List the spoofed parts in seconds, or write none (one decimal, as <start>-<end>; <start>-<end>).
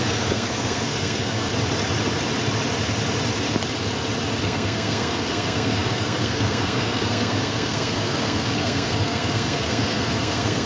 0.0-1.5; 4.4-10.7